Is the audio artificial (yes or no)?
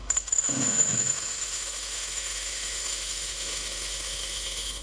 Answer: yes